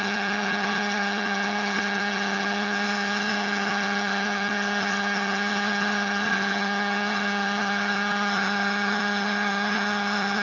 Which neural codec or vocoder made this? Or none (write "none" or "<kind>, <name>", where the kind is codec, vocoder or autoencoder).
vocoder, HiFi-GAN